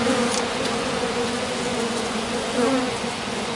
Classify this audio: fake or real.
fake